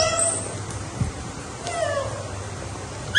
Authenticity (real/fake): fake